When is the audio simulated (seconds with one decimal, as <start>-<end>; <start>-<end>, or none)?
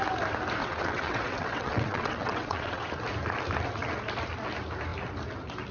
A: 0.6-2.9